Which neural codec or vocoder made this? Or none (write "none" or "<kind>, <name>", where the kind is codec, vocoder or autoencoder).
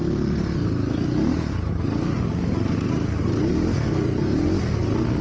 none